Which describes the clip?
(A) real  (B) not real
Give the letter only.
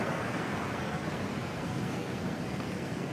B